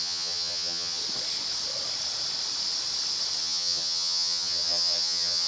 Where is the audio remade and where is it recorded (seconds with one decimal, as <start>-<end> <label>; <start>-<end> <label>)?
0.0-1.0 remade; 1.0-3.4 recorded; 3.4-5.5 remade